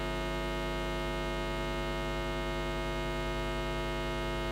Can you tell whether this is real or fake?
real